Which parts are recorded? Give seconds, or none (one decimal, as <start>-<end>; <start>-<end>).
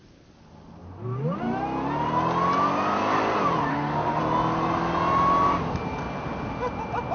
0.0-3.7; 4.2-7.1